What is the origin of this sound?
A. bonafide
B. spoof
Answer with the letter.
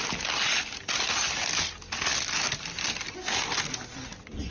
A